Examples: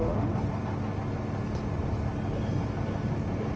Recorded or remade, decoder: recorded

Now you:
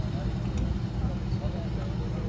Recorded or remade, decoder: recorded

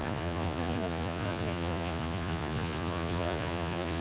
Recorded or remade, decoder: remade, vocoder, Vocos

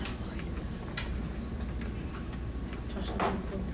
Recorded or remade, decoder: recorded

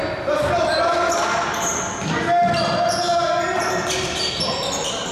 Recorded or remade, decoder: recorded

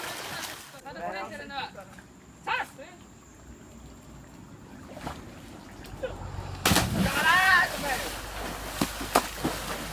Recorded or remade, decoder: recorded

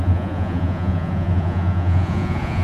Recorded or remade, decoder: remade, vocoder, Vocos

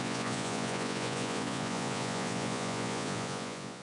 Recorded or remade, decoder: remade, vocoder, Vocos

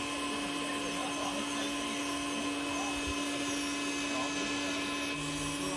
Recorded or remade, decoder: recorded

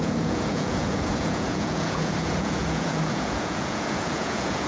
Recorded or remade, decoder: remade, vocoder, Vocos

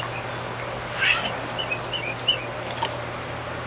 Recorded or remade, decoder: recorded